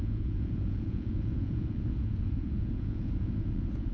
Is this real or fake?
fake